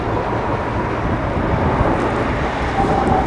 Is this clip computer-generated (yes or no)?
no